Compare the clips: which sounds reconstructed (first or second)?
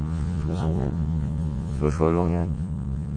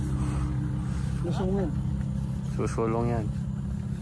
first